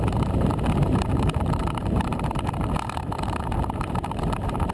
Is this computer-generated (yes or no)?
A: yes